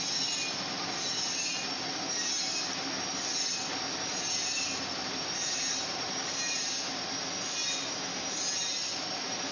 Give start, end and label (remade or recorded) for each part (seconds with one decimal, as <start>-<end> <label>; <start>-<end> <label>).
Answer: 0.0-9.5 recorded